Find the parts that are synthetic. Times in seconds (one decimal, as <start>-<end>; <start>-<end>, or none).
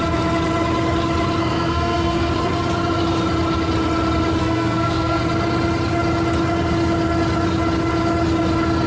1.4-2.3; 4.4-5.2